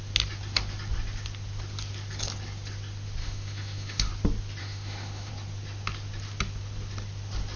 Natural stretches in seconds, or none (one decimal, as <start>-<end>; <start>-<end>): 0.0-3.2; 4.1-4.6; 5.3-7.6